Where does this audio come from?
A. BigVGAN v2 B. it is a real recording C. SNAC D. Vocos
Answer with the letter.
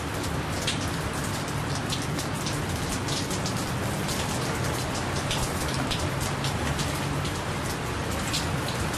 B